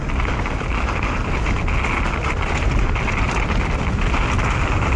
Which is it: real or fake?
real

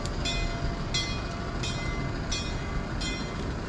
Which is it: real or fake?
real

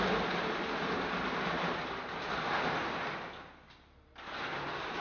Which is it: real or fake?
real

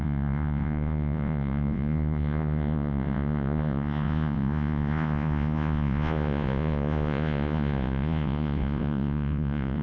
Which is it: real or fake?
fake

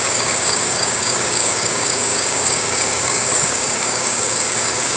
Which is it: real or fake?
fake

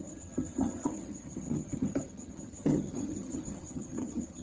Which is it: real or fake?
fake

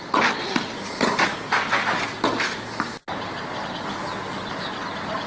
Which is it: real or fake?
real